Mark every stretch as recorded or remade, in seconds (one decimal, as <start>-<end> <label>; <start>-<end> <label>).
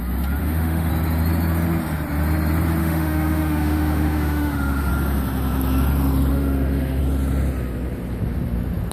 0.0-0.4 recorded; 0.4-0.9 remade; 0.9-2.8 recorded; 2.8-4.9 remade; 4.9-6.3 recorded; 6.3-7.0 remade; 7.0-8.9 recorded